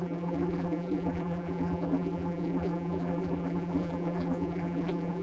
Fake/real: fake